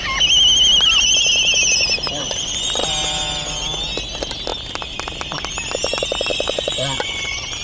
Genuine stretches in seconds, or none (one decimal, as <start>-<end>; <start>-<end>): 0.0-2.2; 2.9-6.3